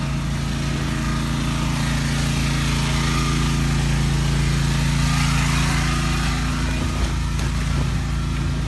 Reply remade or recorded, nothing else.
recorded